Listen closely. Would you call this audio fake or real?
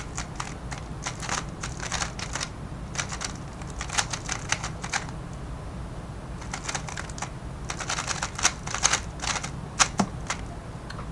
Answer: real